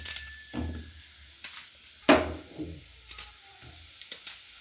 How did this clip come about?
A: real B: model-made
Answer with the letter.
A